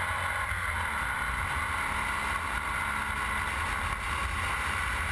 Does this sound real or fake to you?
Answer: real